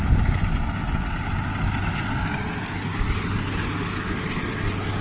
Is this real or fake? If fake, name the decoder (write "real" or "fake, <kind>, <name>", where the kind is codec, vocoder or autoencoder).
real